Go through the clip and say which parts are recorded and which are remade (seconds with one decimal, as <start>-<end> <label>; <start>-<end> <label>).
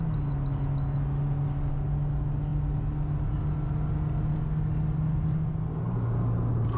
0.0-6.8 recorded